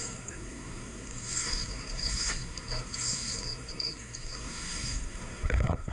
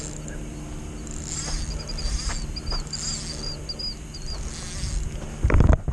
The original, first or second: second